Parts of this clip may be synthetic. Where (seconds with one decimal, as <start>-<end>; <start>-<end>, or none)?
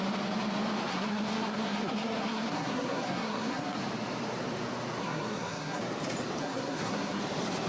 0.9-3.8; 5.0-5.8; 6.4-7.2